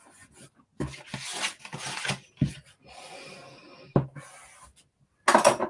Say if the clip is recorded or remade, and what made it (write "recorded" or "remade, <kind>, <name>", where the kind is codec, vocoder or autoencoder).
recorded